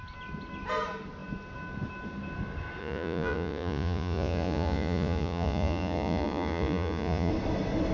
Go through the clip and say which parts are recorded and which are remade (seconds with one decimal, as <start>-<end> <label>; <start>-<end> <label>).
0.0-2.8 recorded; 2.8-7.3 remade; 7.3-7.9 recorded